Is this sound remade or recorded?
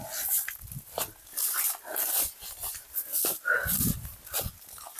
recorded